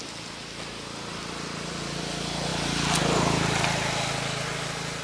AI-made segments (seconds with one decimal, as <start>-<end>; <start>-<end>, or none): none